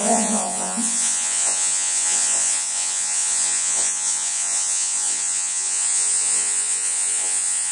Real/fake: fake